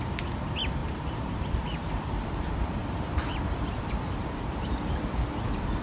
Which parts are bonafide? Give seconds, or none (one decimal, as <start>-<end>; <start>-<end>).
0.0-0.8; 2.3-2.8; 4.6-5.8